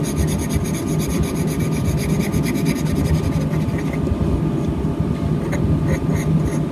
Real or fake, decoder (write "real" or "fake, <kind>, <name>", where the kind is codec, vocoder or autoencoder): real